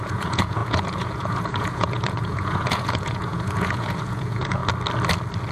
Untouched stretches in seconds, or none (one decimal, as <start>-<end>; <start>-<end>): 4.6-5.5